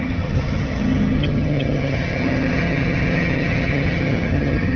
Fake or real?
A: fake